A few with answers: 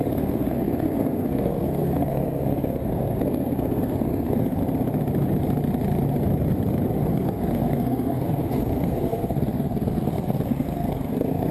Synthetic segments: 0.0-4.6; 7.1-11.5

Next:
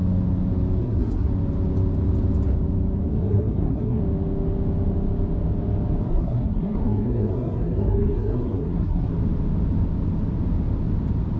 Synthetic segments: 0.8-1.3; 3.1-4.0; 6.0-9.1

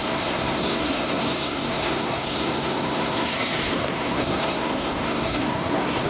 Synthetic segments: 0.0-6.1

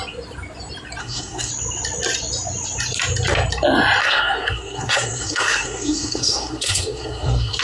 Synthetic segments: 1.0-1.5; 4.0-7.6

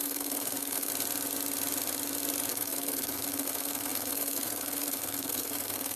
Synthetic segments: 0.0-0.9; 2.5-6.0